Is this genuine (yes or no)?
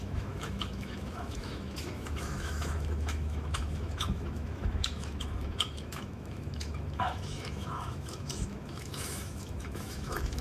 no